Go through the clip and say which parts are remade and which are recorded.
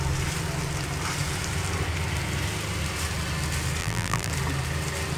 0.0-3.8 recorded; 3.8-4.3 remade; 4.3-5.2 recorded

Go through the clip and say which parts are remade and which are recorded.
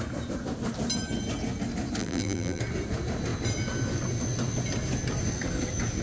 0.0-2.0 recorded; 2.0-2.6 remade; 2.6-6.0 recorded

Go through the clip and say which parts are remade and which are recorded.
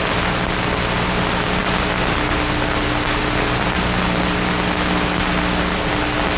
0.0-6.4 recorded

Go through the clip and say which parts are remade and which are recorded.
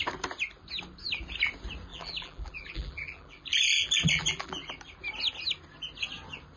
0.0-1.9 recorded; 1.9-4.7 remade; 4.7-6.6 recorded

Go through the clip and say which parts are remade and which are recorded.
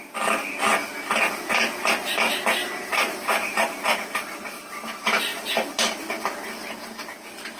0.0-2.6 recorded; 2.6-3.6 remade; 3.6-7.6 recorded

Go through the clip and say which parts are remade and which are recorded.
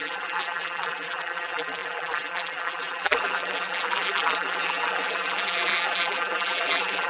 0.0-7.1 remade